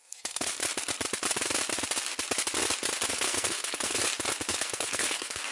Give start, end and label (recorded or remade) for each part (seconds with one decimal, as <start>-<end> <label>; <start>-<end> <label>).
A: 0.0-0.5 remade; 0.5-3.1 recorded; 3.1-4.0 remade; 4.0-4.5 recorded; 4.5-5.5 remade